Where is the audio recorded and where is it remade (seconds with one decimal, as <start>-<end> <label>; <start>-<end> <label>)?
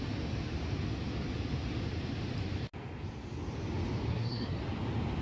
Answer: 0.0-4.1 recorded; 4.1-4.6 remade; 4.6-5.2 recorded